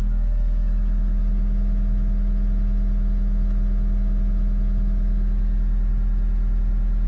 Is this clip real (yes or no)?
yes